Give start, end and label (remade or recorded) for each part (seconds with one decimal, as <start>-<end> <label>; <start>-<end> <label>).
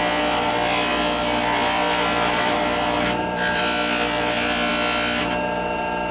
0.0-0.9 recorded; 0.9-3.6 remade; 3.6-6.1 recorded